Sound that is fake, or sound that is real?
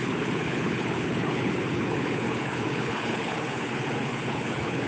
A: fake